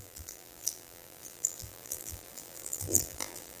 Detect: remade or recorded remade